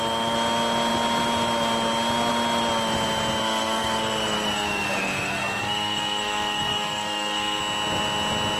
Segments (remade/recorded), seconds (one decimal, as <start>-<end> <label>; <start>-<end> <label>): 0.0-3.4 recorded; 3.4-7.6 remade; 7.6-8.6 recorded